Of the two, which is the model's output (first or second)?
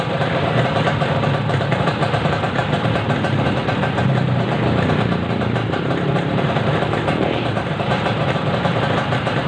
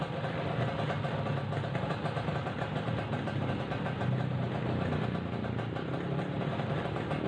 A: first